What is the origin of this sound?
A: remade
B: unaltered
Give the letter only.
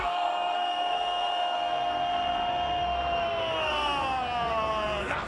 A